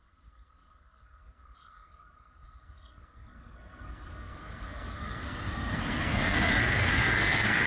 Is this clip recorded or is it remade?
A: remade